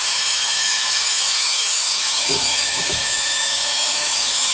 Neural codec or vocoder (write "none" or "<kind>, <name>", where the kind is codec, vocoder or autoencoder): autoencoder, DAC-VAE